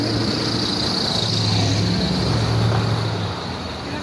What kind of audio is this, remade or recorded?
recorded